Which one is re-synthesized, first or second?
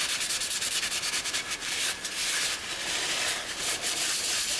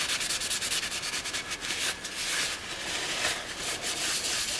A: first